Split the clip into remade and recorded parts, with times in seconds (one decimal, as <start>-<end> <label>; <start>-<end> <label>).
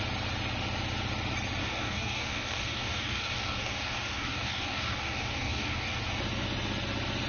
0.0-1.6 recorded; 1.6-6.0 remade; 6.0-7.3 recorded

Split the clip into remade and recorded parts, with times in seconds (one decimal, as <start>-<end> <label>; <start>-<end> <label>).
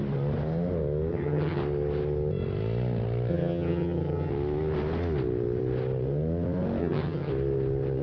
0.0-1.1 recorded; 1.1-1.6 remade; 1.6-3.3 recorded; 3.3-4.3 remade; 4.3-6.8 recorded; 6.8-7.3 remade; 7.3-8.0 recorded